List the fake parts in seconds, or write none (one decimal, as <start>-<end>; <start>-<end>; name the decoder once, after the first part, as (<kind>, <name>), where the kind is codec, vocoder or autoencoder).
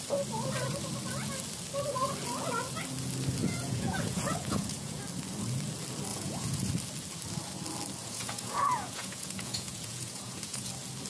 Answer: 3.4-5.0 (vocoder, Vocos); 6.1-6.7; 8.0-10.7